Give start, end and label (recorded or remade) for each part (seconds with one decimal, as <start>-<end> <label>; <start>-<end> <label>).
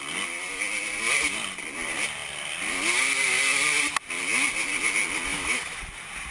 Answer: 0.0-5.3 recorded; 5.3-5.8 remade; 5.8-6.3 recorded